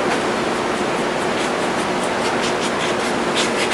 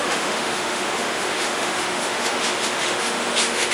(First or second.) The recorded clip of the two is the first